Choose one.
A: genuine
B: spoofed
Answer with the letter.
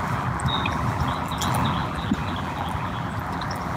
B